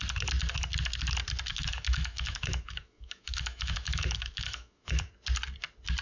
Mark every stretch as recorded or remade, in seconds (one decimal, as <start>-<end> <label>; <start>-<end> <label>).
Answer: 0.0-1.5 recorded; 1.5-5.1 remade; 5.1-6.0 recorded